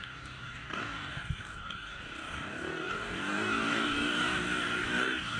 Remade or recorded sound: remade